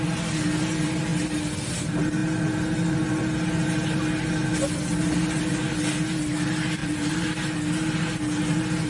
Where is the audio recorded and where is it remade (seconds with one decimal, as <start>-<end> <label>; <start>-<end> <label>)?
0.0-6.8 recorded; 6.8-7.3 remade; 7.3-8.9 recorded